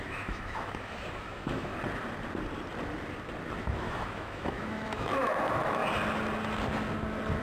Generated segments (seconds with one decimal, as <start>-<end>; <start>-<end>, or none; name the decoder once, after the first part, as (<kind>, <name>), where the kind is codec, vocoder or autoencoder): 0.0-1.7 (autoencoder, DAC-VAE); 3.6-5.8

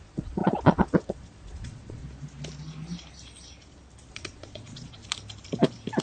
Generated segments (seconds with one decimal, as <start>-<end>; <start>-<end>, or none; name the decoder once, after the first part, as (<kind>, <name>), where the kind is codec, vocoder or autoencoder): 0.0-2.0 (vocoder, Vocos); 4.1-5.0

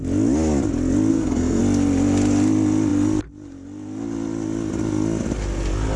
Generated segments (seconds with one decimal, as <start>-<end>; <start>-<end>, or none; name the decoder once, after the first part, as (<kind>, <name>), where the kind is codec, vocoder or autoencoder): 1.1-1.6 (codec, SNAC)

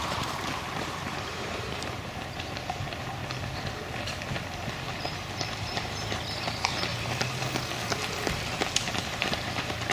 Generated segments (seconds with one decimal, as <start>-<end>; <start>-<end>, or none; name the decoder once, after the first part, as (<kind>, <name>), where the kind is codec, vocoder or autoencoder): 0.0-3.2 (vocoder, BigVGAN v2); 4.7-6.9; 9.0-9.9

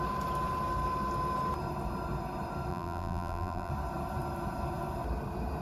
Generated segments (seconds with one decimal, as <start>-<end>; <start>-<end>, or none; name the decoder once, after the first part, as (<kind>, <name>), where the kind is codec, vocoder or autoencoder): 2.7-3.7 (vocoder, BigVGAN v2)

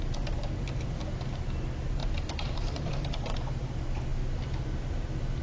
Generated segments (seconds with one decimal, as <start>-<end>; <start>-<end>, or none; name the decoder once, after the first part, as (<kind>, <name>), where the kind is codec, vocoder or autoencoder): 2.0-2.9 (vocoder, BigVGAN v2)

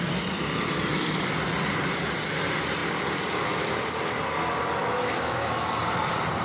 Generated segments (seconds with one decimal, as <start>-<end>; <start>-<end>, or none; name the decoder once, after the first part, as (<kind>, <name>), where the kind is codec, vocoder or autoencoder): 4.8-5.7 (autoencoder, DAC-VAE)

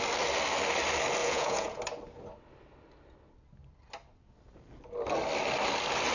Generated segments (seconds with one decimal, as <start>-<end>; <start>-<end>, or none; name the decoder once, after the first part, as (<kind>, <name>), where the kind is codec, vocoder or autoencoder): 1.2-1.8 (vocoder, Vocos)